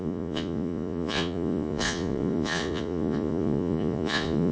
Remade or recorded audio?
remade